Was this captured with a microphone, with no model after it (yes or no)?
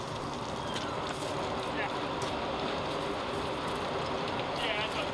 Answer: yes